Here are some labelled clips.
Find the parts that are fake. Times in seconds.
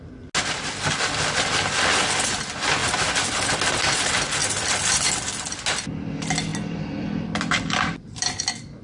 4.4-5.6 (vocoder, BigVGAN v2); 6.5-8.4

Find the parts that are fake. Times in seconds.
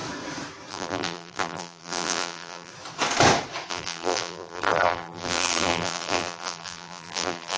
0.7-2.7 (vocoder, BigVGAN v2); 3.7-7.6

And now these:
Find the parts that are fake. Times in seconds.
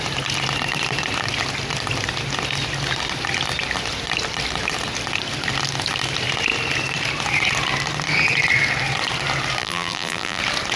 9.6-10.4 (vocoder, BigVGAN v2)